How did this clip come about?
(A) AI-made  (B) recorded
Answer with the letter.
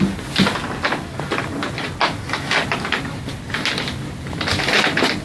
B